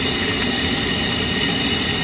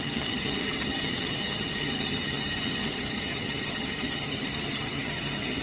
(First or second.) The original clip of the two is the first